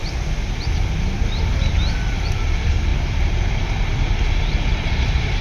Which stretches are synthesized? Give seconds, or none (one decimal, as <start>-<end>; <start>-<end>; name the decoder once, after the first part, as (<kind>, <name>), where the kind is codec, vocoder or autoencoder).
1.4-2.9 (vocoder, BigVGAN v2); 4.3-5.4